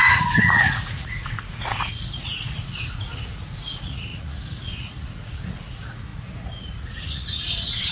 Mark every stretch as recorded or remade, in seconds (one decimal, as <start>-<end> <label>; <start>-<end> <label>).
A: 0.0-7.9 remade